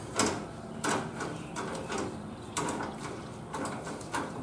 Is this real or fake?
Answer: real